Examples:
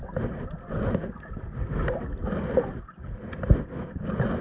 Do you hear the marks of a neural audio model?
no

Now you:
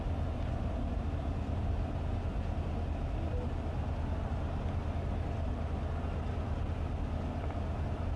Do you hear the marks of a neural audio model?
no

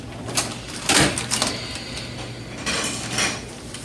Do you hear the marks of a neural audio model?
no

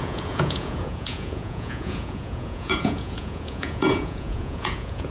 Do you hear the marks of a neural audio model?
yes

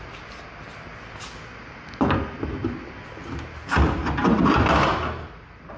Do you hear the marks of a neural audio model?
no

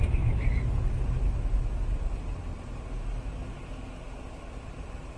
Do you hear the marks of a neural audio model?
no